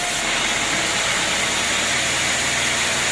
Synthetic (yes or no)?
no